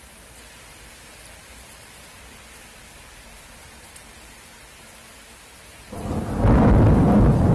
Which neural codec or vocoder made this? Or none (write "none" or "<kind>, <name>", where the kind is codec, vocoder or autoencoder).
none